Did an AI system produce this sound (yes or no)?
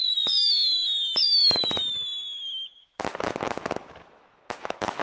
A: yes